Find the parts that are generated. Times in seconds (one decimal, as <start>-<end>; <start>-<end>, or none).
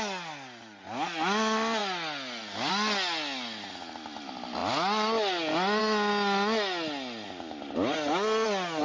none